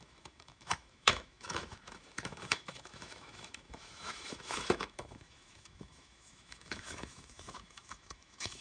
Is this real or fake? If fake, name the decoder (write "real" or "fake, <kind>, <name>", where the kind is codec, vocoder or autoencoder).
fake, autoencoder, DAC-VAE